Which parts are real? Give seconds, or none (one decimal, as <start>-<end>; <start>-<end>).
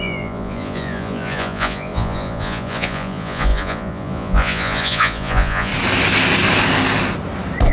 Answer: 5.7-7.7